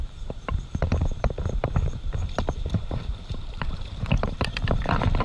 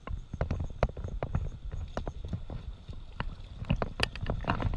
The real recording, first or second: second